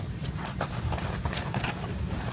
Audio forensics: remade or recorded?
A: recorded